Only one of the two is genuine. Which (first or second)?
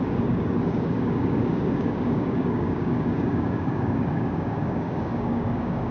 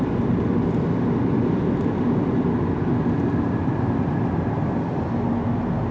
second